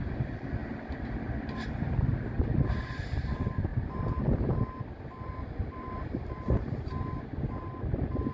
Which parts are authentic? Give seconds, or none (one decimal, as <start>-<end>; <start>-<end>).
0.0-3.7; 6.2-8.3